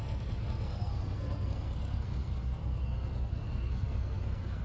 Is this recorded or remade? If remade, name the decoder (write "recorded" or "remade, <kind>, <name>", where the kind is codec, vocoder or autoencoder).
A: remade, codec, SNAC